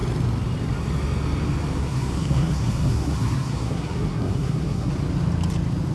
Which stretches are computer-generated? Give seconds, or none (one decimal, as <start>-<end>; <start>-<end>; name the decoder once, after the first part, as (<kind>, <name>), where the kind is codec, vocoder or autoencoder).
1.8-4.9 (codec, SNAC)